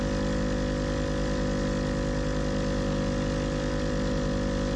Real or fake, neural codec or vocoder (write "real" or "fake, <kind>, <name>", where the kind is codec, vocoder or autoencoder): real